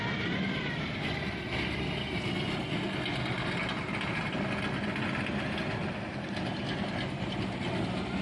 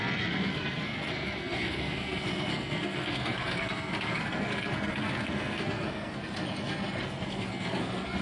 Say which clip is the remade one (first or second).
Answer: second